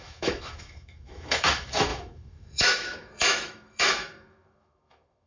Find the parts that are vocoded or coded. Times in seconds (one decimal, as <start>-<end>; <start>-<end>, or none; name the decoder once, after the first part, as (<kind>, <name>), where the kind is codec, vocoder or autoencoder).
0.0-5.3 (autoencoder, DAC-VAE)